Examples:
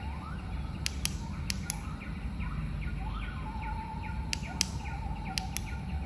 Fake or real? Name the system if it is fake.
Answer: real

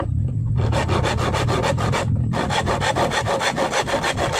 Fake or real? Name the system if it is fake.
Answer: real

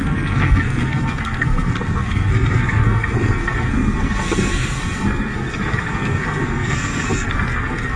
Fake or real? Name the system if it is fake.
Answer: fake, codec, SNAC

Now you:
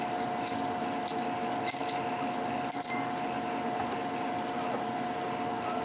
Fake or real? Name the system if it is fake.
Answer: real